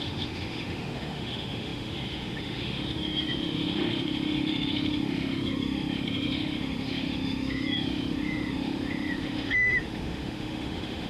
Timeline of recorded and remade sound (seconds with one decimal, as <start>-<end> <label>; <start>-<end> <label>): 0.0-11.1 remade